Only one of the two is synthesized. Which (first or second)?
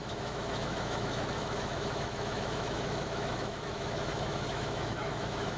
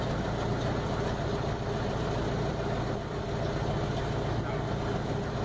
first